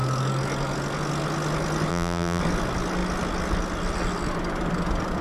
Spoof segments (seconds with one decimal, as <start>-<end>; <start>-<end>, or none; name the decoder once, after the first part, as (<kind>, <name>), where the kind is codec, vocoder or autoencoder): 1.9-2.4 (vocoder, BigVGAN v2)